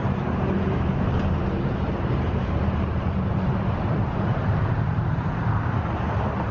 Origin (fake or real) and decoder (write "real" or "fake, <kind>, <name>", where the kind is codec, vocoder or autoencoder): fake, vocoder, BigVGAN v2